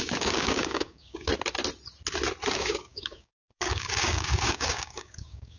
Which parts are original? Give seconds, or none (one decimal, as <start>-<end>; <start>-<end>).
1.3-2.5